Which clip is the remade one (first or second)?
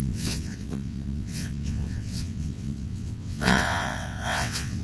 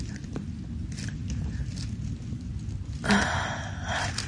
first